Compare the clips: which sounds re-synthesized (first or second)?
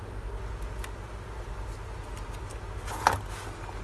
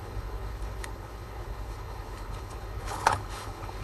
second